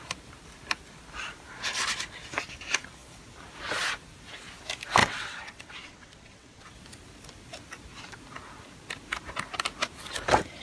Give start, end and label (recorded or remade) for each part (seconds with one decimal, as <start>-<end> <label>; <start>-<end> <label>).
0.0-5.0 recorded; 5.0-6.7 remade; 6.7-10.6 recorded